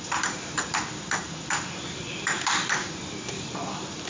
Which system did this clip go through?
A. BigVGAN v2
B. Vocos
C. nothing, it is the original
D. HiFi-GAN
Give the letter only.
C